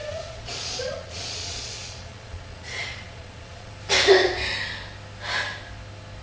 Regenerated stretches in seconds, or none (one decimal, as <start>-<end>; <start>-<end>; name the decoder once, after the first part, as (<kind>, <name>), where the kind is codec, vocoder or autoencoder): 0.0-3.7 (vocoder, Vocos)